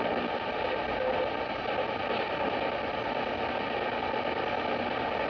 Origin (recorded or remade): recorded